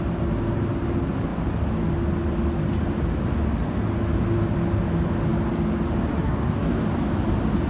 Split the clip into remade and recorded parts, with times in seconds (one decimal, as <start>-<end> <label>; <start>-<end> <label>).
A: 0.0-6.2 recorded; 6.2-6.8 remade; 6.8-7.7 recorded